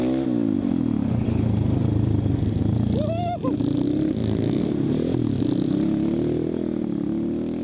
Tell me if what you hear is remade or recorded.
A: recorded